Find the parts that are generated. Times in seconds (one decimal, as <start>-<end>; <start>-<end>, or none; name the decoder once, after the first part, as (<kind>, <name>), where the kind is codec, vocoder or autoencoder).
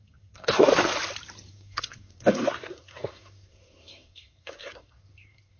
0.0-0.7 (codec, SNAC); 1.5-5.6